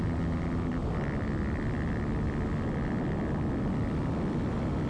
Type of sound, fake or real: real